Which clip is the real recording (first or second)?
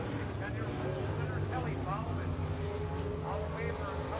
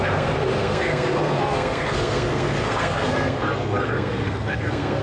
first